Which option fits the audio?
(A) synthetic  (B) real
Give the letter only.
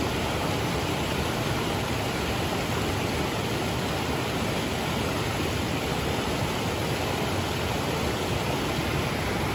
B